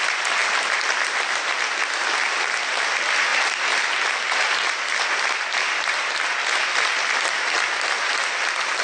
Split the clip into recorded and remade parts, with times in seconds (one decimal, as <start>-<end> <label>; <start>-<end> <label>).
0.0-8.8 recorded